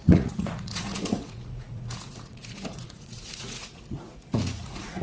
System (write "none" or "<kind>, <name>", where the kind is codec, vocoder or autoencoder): vocoder, Vocos